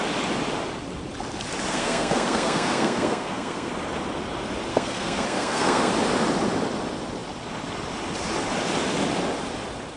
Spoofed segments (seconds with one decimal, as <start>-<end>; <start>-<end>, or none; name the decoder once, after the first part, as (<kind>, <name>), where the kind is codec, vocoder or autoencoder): 1.7-3.7 (codec, SNAC); 4.7-5.9